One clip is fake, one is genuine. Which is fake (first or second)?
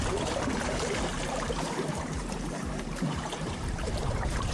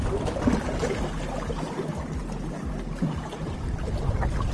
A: first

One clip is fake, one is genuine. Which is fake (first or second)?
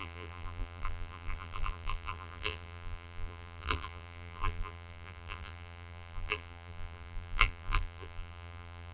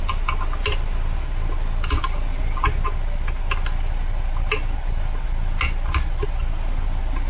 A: first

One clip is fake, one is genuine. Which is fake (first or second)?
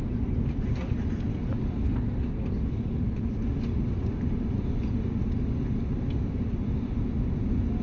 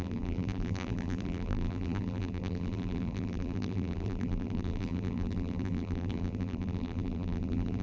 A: second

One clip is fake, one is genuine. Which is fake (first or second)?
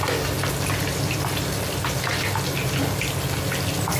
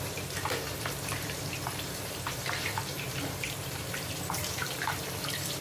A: second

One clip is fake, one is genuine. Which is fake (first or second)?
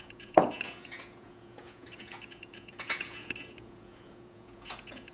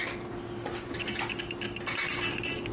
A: first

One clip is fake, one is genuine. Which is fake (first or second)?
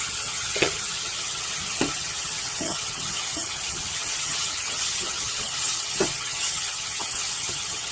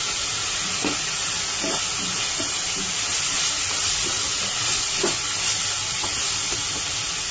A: first